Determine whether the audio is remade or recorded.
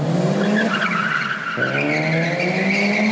recorded